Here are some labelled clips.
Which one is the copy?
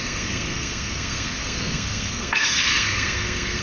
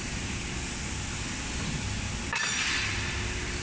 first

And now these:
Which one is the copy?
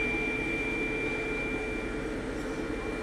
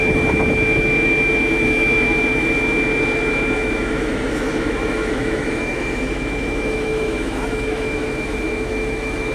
second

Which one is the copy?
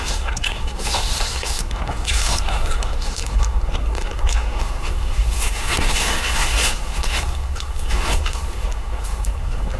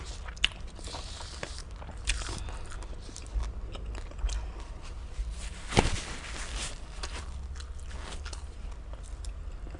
first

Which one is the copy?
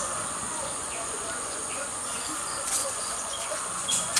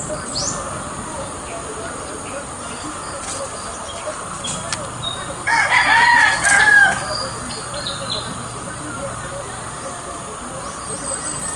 first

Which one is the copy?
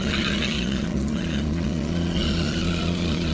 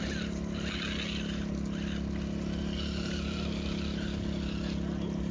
first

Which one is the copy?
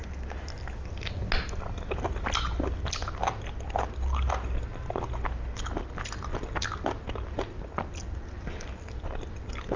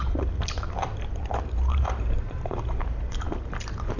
second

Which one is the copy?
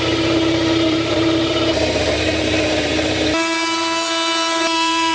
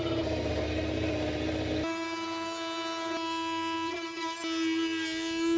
first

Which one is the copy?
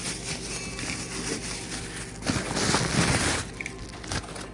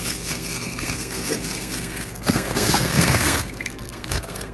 second